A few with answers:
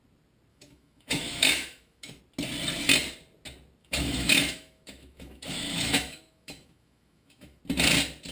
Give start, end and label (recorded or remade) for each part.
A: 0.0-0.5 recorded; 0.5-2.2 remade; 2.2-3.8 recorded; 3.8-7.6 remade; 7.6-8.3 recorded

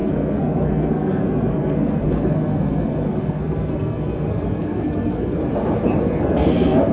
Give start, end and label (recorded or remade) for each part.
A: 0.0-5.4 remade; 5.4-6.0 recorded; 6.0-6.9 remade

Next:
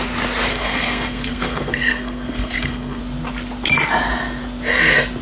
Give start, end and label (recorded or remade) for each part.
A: 0.0-0.5 recorded; 0.5-3.0 remade; 3.0-5.2 recorded